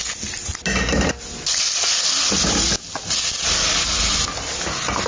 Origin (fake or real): real